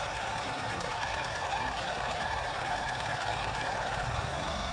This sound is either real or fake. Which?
fake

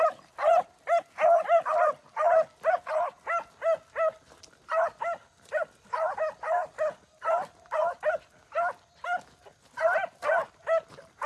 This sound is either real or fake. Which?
real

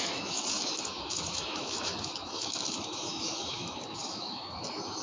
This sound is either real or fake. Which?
fake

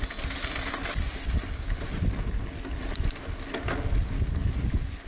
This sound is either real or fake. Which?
real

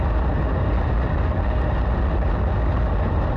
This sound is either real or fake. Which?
real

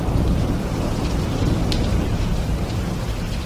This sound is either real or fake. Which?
fake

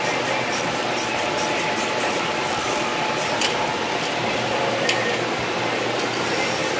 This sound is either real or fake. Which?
real